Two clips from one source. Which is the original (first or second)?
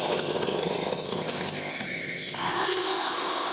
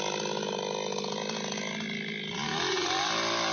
second